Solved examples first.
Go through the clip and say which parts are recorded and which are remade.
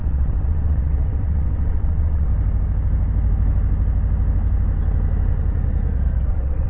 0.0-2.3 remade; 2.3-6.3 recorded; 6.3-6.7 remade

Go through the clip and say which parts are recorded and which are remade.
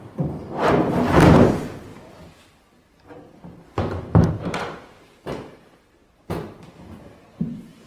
0.0-7.9 recorded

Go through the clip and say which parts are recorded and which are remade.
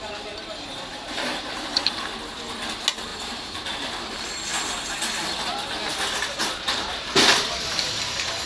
0.0-0.9 recorded; 0.9-2.0 remade; 2.0-3.1 recorded; 3.1-4.1 remade; 4.1-8.5 recorded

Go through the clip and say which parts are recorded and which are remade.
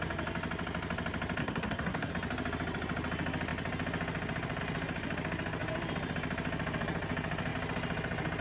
0.0-1.4 recorded; 1.4-2.1 remade; 2.1-8.4 recorded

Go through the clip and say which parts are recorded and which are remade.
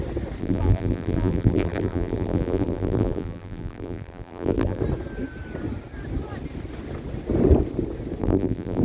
0.0-0.4 recorded; 0.4-4.8 remade; 4.8-8.2 recorded; 8.2-8.8 remade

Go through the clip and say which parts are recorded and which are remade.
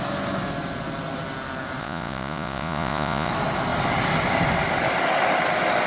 0.0-1.8 recorded; 1.8-3.3 remade; 3.3-5.9 recorded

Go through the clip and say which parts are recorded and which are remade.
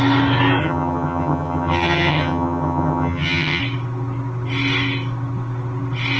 0.0-0.6 recorded; 0.6-3.6 remade; 3.6-6.2 recorded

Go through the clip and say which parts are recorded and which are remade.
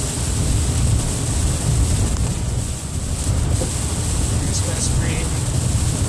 0.0-2.2 recorded; 2.2-2.9 remade; 2.9-4.6 recorded; 4.6-5.2 remade; 5.2-6.1 recorded